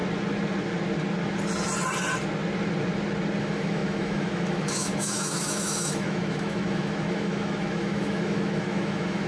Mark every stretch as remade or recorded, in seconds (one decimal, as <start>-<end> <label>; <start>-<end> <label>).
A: 0.0-3.4 recorded; 3.4-9.3 remade